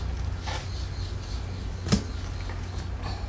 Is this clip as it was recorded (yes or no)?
yes